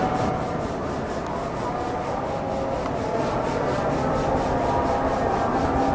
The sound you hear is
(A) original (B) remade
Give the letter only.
A